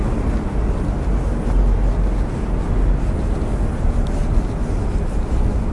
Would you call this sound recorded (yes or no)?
yes